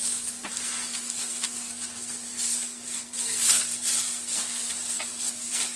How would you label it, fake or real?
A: fake